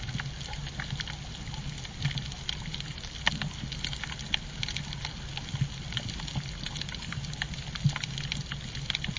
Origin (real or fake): real